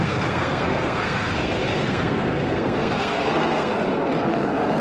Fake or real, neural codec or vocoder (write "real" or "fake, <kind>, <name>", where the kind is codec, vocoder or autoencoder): fake, codec, SNAC